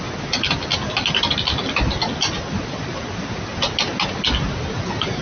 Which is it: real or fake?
real